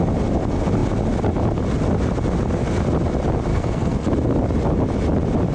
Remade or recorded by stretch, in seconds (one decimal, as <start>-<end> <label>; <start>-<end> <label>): 0.0-3.5 recorded; 3.5-4.1 remade; 4.1-5.5 recorded